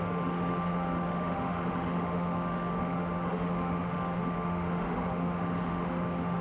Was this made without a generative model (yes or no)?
no